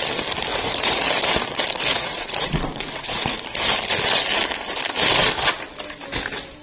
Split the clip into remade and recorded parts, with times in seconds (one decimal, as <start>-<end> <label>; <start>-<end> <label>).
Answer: 0.0-0.5 recorded; 0.5-1.1 remade; 1.1-1.9 recorded; 1.9-3.4 remade; 3.4-6.6 recorded